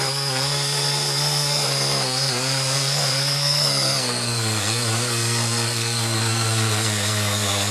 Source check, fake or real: fake